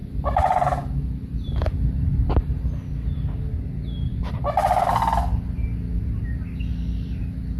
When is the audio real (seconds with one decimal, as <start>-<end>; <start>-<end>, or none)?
0.0-7.6